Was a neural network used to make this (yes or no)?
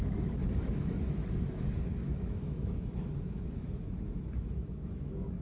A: yes